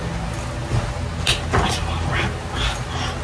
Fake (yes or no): no